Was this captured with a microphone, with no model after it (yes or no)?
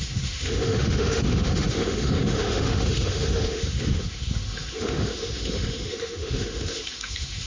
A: no